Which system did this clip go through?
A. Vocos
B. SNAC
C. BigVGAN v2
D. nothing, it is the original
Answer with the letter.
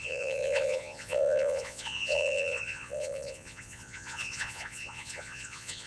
A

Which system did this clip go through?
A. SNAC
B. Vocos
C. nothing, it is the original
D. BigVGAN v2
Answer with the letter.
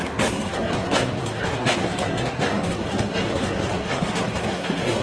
A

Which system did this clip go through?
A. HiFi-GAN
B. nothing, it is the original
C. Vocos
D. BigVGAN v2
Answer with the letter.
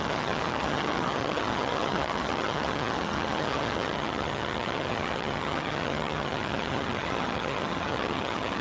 A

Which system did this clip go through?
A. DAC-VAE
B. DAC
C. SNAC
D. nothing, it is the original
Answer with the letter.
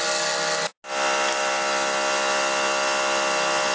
D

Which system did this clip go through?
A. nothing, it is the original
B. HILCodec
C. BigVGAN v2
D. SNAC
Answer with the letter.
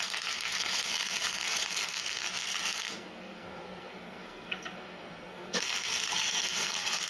D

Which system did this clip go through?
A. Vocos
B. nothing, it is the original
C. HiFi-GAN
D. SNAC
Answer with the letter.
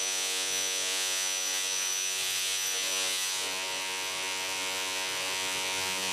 A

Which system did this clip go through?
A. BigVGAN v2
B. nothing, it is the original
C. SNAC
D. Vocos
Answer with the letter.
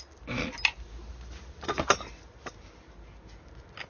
B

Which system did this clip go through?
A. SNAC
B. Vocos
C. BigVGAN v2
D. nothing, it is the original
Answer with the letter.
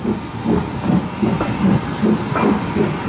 D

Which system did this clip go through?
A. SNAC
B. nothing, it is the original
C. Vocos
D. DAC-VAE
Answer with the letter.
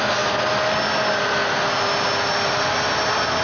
B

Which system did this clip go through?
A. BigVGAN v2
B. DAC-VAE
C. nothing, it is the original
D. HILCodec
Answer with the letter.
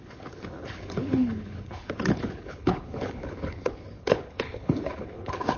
D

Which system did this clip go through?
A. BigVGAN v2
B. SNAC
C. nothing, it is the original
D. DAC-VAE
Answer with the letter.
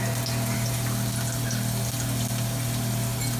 C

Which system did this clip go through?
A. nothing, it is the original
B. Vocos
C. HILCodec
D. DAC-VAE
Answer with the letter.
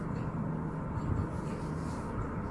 A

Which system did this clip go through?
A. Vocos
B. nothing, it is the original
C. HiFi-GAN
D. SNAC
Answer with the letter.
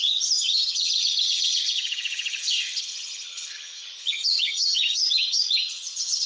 C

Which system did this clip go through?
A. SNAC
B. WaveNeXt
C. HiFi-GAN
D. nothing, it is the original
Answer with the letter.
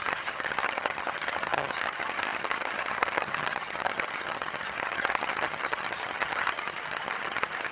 C